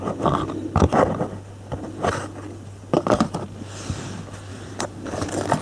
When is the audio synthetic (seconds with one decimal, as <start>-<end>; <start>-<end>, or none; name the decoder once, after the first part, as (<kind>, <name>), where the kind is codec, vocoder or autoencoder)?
4.5-5.1 (vocoder, BigVGAN v2)